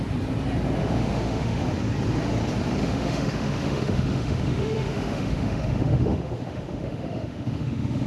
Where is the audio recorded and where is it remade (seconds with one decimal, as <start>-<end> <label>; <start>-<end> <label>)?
0.0-0.8 recorded; 0.8-1.6 remade; 1.6-2.8 recorded; 2.8-8.1 remade